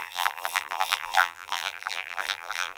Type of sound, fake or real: fake